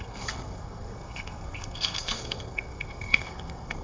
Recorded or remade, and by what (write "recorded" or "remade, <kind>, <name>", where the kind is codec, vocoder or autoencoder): remade, codec, SNAC